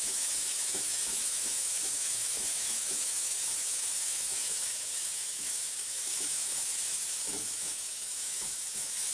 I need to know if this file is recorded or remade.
remade